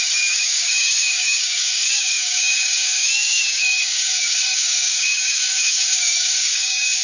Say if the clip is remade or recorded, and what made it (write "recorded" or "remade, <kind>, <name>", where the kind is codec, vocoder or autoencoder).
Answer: remade, codec, DAC